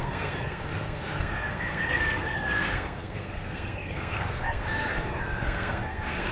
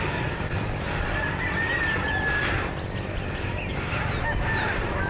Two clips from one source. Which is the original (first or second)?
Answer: second